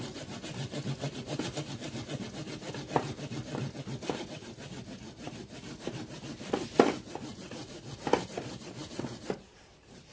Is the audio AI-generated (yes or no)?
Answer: no